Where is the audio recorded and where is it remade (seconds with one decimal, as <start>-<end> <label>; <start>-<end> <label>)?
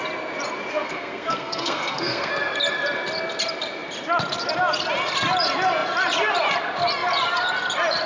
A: 0.0-0.7 recorded; 0.7-2.3 remade; 2.3-8.1 recorded